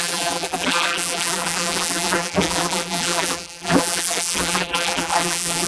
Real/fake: fake